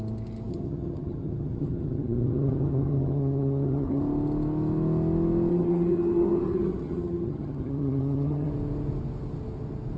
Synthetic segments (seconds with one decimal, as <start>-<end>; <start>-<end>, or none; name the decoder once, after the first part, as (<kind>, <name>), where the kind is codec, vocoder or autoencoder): 0.5-4.0 (vocoder, HiFi-GAN); 5.5-8.5